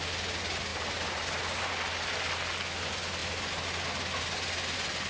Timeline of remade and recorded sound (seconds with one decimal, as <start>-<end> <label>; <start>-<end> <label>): 0.0-5.1 recorded